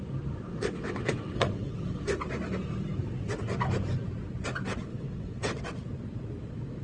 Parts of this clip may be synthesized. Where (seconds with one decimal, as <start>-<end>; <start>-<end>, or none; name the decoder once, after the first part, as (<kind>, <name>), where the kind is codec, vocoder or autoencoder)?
0.5-2.0 (vocoder, WaveNeXt); 4.9-5.6